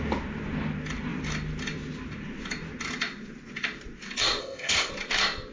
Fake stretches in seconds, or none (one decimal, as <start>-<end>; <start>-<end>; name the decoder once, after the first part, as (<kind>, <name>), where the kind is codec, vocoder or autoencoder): 4.4-4.9 (codec, ZipCodec)

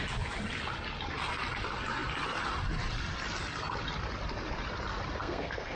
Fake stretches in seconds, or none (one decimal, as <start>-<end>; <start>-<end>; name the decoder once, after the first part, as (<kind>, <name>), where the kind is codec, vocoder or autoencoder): 5.2-5.8 (codec, SNAC)

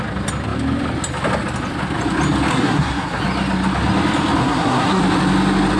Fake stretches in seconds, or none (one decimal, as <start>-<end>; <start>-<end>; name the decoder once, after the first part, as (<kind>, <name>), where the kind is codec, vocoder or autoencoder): 2.5-3.2 (codec, SNAC); 4.4-5.0